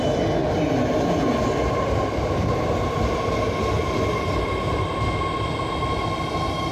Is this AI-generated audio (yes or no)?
no